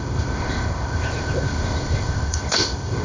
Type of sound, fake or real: fake